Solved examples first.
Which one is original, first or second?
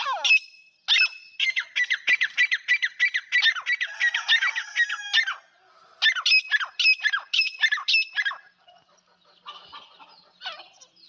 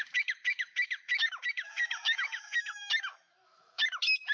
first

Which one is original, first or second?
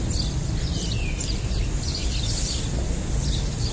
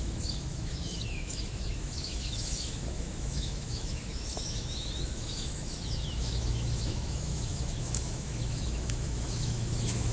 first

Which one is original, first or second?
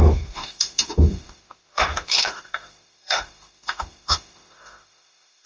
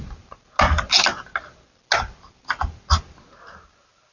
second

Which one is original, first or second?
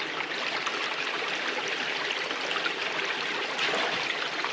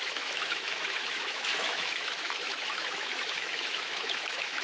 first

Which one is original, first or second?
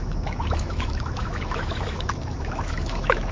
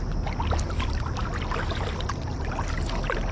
second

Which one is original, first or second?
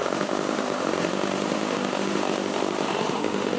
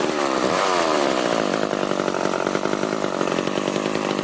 second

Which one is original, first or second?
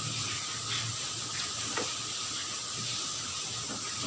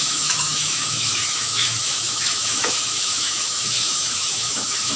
first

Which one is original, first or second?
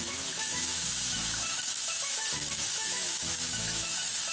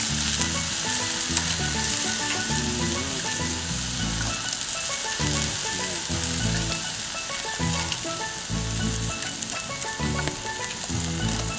second